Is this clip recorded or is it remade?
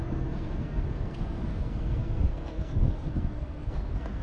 remade